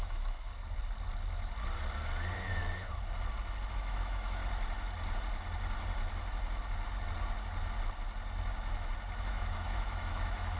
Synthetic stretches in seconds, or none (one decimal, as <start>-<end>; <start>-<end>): 0.0-0.5; 3.7-4.4; 9.2-10.6